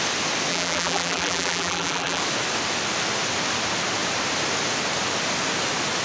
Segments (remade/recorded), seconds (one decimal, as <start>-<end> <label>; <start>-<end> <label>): 0.0-0.5 recorded; 0.5-2.2 remade; 2.2-6.0 recorded